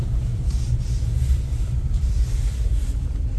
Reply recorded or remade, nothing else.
remade